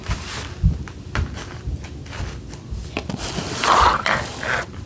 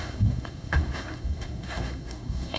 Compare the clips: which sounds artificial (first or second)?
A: second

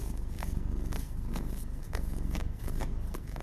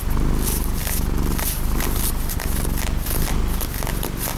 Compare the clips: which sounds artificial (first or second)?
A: first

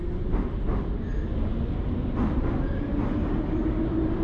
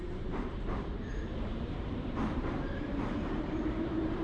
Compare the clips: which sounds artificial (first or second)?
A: second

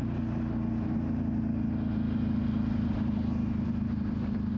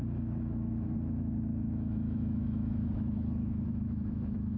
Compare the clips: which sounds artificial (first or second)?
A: second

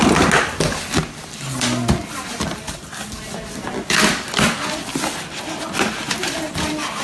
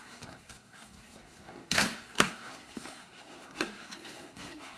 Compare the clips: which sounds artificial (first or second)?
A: second